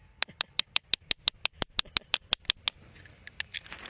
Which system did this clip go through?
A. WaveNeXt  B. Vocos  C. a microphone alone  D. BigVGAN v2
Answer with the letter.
C